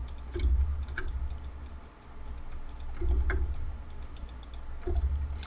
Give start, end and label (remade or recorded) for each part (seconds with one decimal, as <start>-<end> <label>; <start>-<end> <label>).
0.0-5.5 recorded